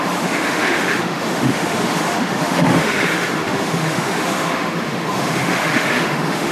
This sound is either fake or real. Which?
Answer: fake